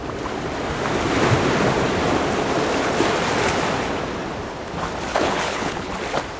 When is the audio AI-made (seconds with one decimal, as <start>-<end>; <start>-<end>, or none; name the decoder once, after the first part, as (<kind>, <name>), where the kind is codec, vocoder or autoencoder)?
5.1-5.9 (codec, HILCodec)